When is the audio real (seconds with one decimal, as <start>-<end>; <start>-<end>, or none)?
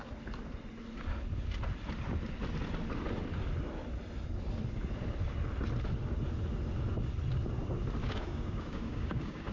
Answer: 0.0-8.0